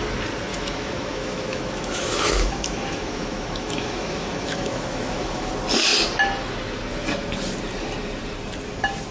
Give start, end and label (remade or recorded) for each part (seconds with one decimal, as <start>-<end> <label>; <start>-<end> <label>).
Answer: 0.0-0.5 recorded; 0.5-5.5 remade; 5.5-9.1 recorded